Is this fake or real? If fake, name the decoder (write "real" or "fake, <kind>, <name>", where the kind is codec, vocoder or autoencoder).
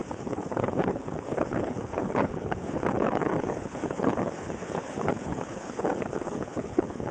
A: fake, codec, HILCodec